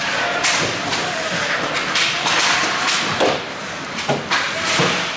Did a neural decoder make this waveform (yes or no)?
no